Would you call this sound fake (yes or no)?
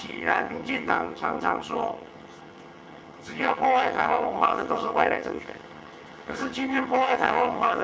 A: yes